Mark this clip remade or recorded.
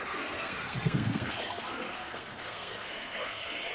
remade